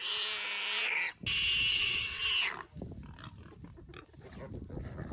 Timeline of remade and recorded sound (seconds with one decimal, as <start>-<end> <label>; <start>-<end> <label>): 0.0-1.7 recorded; 1.7-2.2 remade; 2.2-5.1 recorded